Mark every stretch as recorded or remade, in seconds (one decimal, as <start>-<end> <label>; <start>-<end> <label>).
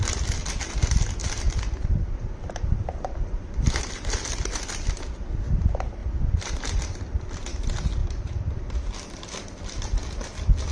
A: 0.0-1.2 recorded; 1.2-3.9 remade; 3.9-6.0 recorded; 6.0-7.0 remade; 7.0-8.0 recorded; 8.0-8.9 remade; 8.9-10.7 recorded